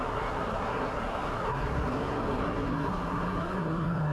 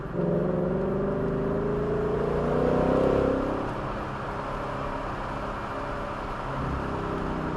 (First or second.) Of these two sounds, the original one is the second